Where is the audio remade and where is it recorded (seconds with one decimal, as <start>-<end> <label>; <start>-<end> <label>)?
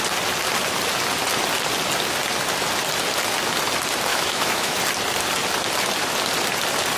0.0-4.1 recorded; 4.1-4.8 remade; 4.8-7.0 recorded